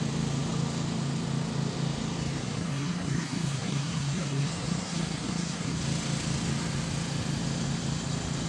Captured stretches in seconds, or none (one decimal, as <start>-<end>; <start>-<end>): 0.0-2.4; 5.8-8.5